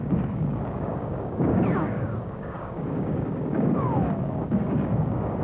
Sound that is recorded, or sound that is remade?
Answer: remade